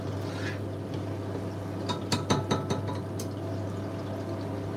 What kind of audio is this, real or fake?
real